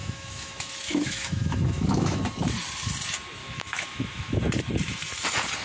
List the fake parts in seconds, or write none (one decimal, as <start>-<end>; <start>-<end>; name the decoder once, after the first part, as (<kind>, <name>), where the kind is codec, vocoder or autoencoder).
0.0-2.2 (autoencoder, DAC-VAE); 3.4-4.4